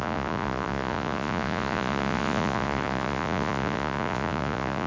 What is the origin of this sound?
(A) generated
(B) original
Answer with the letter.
A